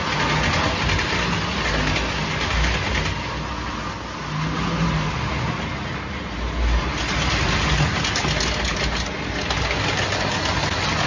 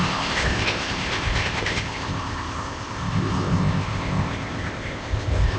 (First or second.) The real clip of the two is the first